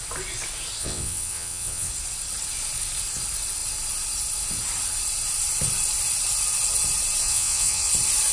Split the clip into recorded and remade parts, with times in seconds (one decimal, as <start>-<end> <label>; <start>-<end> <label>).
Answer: 0.0-0.8 recorded; 0.8-1.9 remade; 1.9-7.2 recorded; 7.2-7.9 remade; 7.9-8.3 recorded